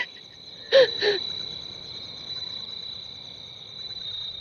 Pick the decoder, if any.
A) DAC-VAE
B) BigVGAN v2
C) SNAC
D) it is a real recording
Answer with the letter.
D